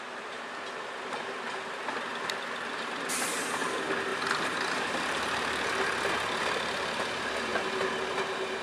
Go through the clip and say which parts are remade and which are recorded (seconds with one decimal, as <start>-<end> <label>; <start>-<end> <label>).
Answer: 0.0-4.1 recorded; 4.1-5.6 remade; 5.6-8.6 recorded